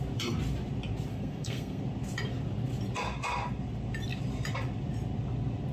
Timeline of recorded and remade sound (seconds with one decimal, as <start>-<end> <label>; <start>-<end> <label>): 0.0-1.1 recorded; 1.1-1.8 remade; 1.8-5.7 recorded